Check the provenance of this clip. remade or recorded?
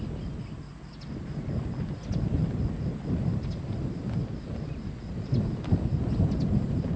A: recorded